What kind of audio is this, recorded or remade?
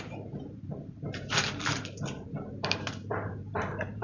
remade